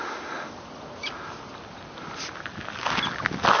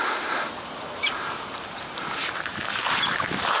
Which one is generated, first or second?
second